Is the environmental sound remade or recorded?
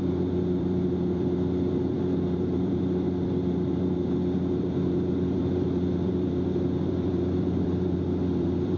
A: remade